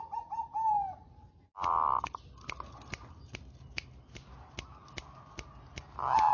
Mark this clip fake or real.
real